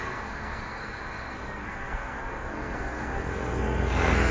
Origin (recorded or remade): remade